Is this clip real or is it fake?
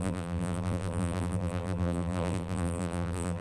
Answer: fake